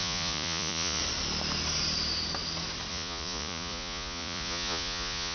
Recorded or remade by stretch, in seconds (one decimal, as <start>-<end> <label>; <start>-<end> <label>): 0.0-1.0 remade; 1.0-2.9 recorded; 2.9-5.3 remade

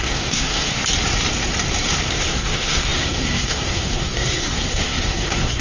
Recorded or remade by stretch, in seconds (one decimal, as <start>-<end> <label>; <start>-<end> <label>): 0.0-0.8 remade; 0.8-2.1 recorded; 2.1-5.6 remade